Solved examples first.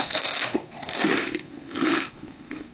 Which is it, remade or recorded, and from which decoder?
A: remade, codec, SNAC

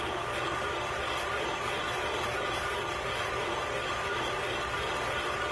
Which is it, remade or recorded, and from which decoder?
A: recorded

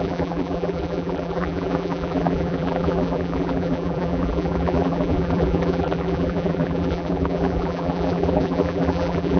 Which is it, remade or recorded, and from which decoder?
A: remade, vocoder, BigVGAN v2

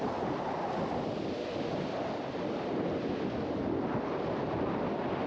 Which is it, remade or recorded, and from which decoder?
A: recorded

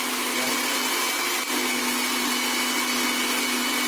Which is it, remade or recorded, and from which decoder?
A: recorded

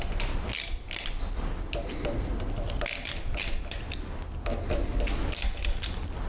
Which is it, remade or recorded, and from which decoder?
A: recorded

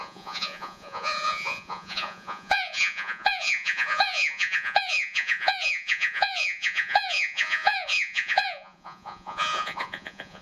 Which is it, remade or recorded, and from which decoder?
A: remade, vocoder, Vocos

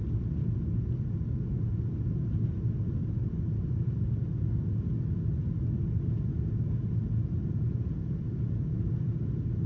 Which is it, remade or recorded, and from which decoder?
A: recorded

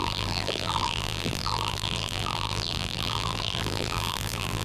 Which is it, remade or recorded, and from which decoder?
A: remade, vocoder, BigVGAN v2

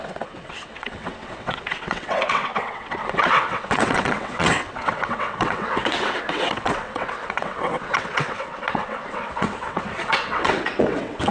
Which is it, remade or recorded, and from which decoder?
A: remade, vocoder, WaveNeXt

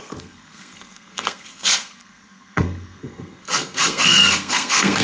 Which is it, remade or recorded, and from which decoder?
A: remade, codec, SNAC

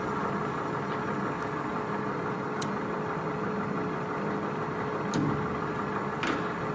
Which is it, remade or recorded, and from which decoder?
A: recorded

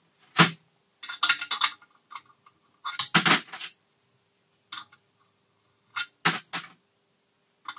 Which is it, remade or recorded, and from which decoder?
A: recorded